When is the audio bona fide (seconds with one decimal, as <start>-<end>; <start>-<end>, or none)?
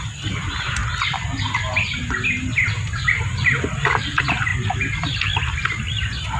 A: 0.8-2.4; 4.5-5.8